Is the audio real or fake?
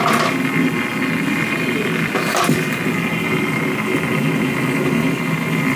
real